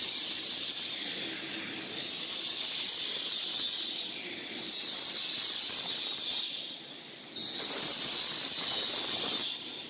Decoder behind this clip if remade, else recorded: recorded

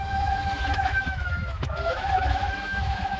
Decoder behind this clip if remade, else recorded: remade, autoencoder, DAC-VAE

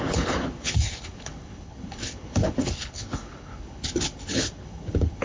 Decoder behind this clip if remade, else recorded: remade, codec, HILCodec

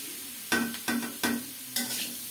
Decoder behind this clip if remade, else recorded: recorded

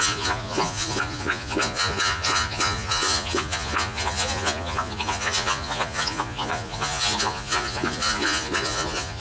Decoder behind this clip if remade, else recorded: remade, vocoder, Vocos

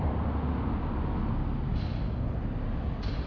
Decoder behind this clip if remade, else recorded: recorded